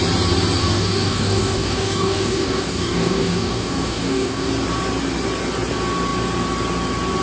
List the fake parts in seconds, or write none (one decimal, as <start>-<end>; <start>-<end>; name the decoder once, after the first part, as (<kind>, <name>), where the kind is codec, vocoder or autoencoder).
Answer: 0.6-4.5 (codec, DAC)